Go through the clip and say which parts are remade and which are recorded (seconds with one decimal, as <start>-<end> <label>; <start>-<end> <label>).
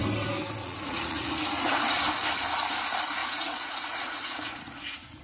0.0-0.6 recorded; 0.6-1.8 remade; 1.8-3.2 recorded; 3.2-5.2 remade